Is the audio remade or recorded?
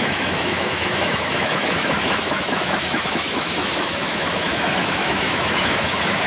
remade